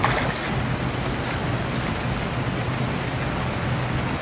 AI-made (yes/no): no